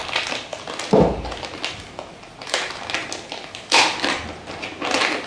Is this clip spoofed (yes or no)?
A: no